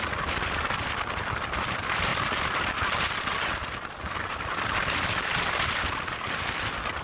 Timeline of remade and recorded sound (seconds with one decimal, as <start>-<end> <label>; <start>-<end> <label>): 0.0-2.1 recorded; 2.1-2.8 remade; 2.8-3.6 recorded; 3.6-4.5 remade; 4.5-7.0 recorded